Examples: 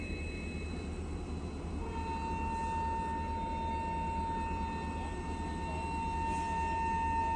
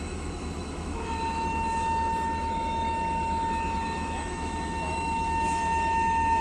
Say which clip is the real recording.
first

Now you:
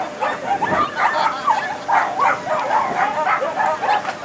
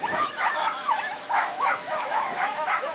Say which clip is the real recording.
first